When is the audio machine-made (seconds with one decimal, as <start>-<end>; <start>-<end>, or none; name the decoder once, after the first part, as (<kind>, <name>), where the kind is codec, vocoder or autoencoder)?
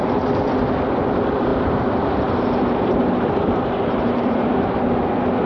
1.5-4.8 (vocoder, BigVGAN v2)